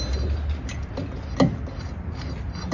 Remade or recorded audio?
recorded